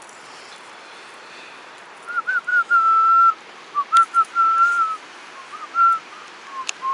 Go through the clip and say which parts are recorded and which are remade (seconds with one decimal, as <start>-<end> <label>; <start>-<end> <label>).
0.0-2.5 recorded; 2.5-3.3 remade; 3.3-6.9 recorded